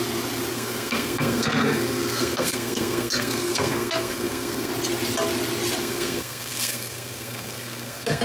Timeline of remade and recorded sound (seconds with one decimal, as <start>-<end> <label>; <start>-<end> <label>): 0.0-0.5 recorded; 0.5-4.7 remade; 4.7-5.8 recorded; 5.8-8.2 remade